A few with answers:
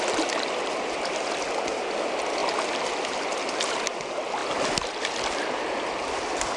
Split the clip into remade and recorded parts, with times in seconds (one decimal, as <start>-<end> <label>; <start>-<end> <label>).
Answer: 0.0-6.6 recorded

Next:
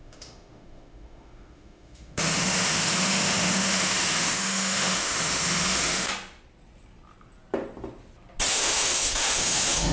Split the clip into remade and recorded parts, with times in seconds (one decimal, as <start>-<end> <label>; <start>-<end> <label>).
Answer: 0.0-6.1 remade; 6.1-8.5 recorded; 8.5-9.9 remade

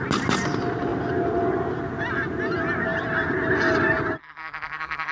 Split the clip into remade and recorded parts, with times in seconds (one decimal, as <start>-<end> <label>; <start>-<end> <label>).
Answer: 0.0-4.2 recorded; 4.2-5.1 remade

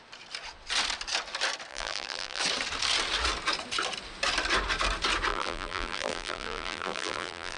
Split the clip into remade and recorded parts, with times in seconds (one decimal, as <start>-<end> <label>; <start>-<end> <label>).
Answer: 0.0-1.7 recorded; 1.7-2.4 remade; 2.4-5.3 recorded; 5.3-7.6 remade

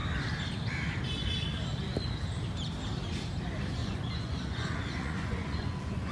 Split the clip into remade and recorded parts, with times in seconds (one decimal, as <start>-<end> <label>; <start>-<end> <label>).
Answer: 0.0-3.8 recorded; 3.8-6.1 remade